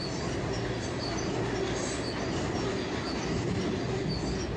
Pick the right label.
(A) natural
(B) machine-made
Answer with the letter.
A